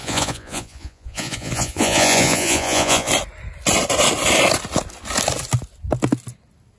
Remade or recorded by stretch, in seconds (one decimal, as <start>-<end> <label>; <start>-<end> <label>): 0.0-3.1 remade; 3.1-6.8 recorded